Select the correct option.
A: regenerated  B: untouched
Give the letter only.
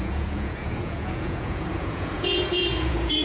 A